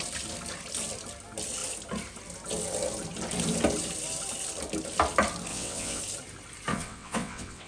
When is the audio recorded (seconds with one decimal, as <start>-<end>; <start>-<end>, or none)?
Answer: 0.0-5.5; 6.0-6.7